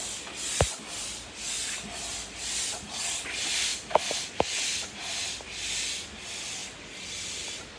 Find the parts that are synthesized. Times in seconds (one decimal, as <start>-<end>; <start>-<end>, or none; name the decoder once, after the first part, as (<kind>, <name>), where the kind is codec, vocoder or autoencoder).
none